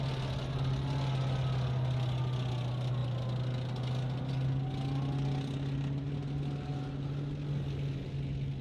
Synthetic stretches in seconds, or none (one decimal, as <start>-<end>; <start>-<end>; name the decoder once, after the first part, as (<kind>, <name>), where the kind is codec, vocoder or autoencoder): none